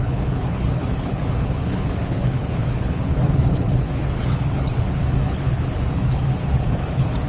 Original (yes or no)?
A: no